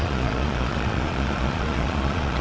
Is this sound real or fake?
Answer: fake